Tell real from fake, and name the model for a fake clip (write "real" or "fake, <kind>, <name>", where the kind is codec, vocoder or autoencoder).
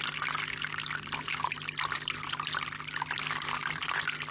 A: real